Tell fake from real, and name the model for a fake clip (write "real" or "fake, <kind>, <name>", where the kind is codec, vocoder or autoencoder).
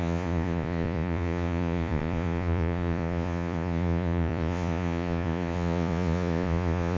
fake, vocoder, Vocos